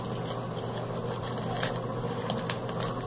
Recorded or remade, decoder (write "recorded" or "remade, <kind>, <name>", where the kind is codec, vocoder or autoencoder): recorded